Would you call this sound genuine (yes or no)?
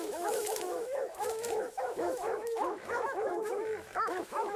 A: no